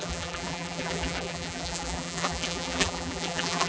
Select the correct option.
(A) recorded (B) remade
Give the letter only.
B